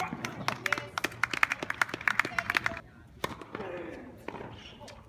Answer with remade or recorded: recorded